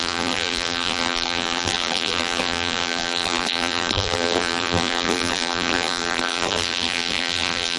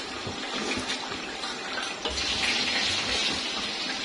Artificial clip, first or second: first